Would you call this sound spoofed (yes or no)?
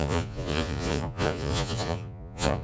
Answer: yes